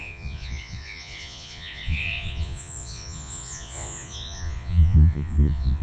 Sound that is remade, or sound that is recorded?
remade